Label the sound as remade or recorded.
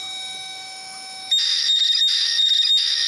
remade